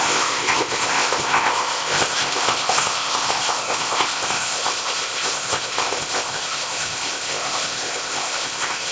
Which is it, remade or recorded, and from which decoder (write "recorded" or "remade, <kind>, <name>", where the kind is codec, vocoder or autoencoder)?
remade, codec, ZipCodec